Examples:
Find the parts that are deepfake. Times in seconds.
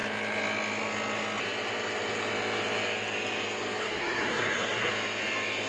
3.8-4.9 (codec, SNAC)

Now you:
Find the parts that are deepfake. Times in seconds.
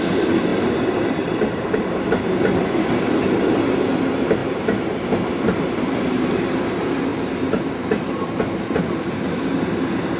0.5-1.9 (vocoder, BigVGAN v2)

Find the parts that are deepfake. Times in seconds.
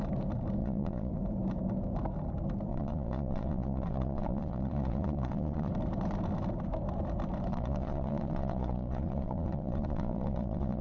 0.6-1.1 (vocoder, Vocos); 2.7-5.7; 7.5-10.8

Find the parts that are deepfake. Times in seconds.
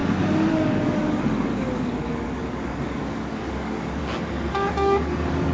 0.5-4.0 (codec, DAC); 4.5-5.5